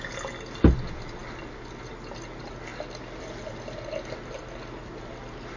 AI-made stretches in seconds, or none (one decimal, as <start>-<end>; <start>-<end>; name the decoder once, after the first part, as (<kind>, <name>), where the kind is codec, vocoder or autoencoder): none